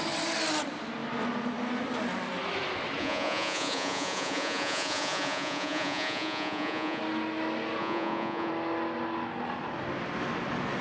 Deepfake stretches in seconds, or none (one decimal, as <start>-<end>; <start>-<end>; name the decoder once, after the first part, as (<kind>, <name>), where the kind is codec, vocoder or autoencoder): 3.0-7.0 (vocoder, Vocos); 7.8-8.5